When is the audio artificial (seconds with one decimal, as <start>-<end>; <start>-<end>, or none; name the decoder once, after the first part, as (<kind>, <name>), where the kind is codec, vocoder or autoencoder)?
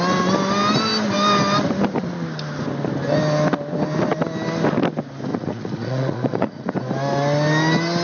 5.3-6.7 (vocoder, Vocos)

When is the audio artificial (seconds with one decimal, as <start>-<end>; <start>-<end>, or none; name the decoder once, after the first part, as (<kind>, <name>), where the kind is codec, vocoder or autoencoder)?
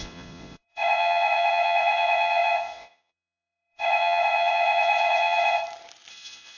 0.0-5.6 (vocoder, Vocos); 6.1-6.6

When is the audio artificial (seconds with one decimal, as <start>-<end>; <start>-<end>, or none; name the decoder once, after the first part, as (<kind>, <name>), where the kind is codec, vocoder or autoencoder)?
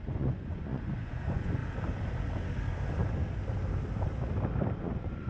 0.0-1.6 (vocoder, Vocos); 4.8-5.3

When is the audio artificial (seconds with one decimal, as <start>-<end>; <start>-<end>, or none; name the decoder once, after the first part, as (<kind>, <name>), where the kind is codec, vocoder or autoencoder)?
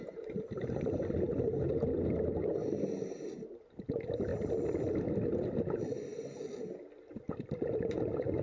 none